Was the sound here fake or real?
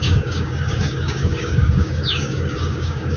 fake